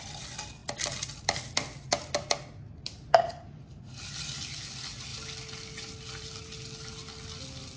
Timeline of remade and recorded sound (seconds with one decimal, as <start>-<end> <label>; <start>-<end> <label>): 0.0-7.8 recorded